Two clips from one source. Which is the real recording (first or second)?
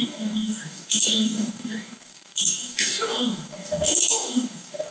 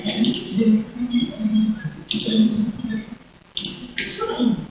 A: second